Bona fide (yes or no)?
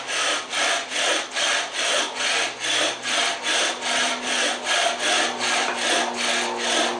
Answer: yes